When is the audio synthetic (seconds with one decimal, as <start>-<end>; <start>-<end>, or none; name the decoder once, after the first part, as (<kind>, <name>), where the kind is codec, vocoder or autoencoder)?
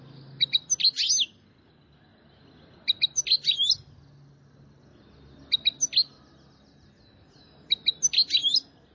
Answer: none